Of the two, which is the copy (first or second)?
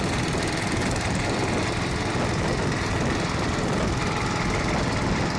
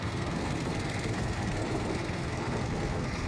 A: second